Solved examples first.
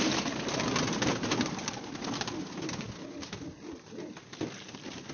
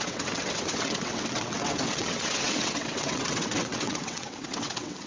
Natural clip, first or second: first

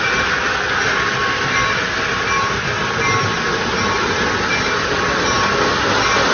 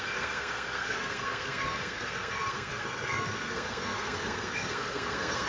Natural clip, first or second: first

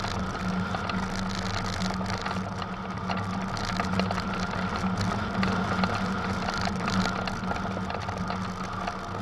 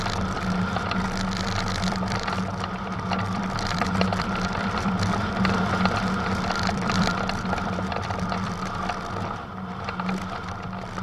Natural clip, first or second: first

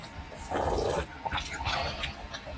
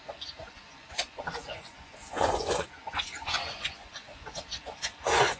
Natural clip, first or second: first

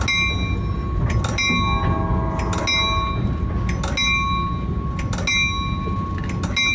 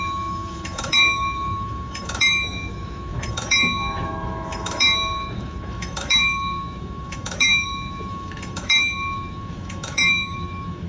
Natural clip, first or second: first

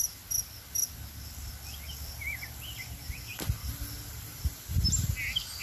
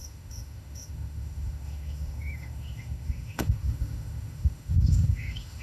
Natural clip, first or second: first